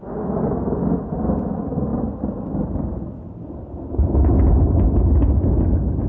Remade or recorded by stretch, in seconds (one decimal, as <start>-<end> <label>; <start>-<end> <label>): 0.0-6.1 recorded

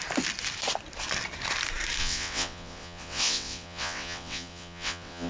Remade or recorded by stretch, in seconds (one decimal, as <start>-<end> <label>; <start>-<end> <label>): 0.0-2.0 recorded; 2.0-5.3 remade

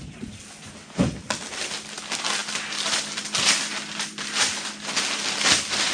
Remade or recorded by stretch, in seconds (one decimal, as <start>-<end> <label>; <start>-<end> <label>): 0.0-5.9 recorded